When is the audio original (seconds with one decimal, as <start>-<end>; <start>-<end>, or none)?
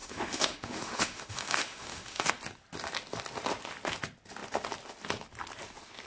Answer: 2.3-6.1